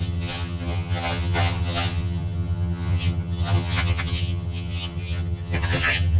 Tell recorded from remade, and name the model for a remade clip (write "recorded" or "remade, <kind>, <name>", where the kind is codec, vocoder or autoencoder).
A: remade, vocoder, HiFi-GAN